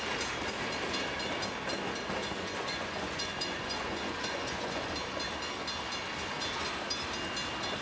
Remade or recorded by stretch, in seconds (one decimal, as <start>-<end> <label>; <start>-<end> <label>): 0.0-2.2 recorded; 2.2-4.9 remade; 4.9-7.8 recorded